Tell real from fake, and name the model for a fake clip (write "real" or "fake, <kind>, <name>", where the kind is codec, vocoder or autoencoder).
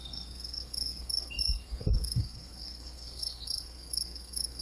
fake, codec, SNAC